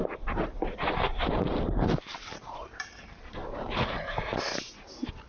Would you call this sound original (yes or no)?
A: no